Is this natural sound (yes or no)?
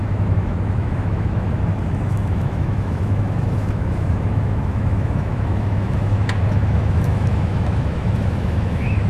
no